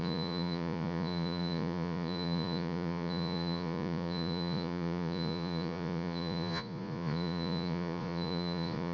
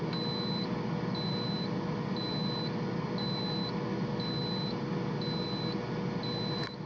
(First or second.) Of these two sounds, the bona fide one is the second